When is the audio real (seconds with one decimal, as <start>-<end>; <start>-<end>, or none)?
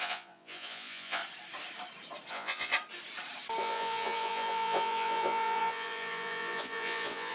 1.2-2.3; 2.7-3.6